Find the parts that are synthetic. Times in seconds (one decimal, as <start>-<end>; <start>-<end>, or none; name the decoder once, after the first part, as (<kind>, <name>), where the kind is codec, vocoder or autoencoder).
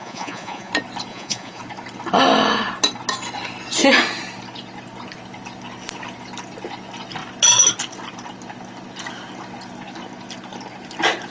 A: 0.0-0.7 (vocoder, Vocos); 1.1-1.6